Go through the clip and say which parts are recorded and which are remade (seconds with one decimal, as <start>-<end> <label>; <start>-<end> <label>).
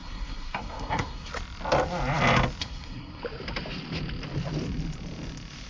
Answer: 0.0-1.3 remade; 1.3-2.6 recorded; 2.6-3.2 remade; 3.2-5.7 recorded